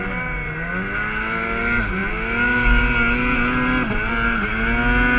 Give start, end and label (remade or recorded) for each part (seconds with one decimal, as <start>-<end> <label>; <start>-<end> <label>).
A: 0.0-5.2 recorded